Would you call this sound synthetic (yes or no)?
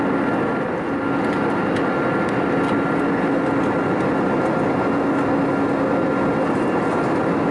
no